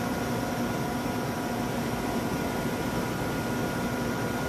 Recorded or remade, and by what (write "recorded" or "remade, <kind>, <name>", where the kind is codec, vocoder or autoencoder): recorded